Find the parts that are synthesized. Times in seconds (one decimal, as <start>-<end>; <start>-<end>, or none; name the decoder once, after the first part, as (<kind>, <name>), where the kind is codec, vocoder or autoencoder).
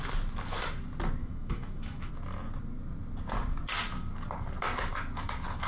1.2-2.1 (autoencoder, DAC-VAE)